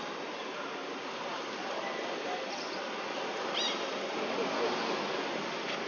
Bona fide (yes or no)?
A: yes